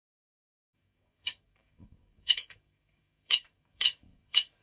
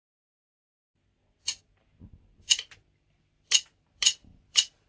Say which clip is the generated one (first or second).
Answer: first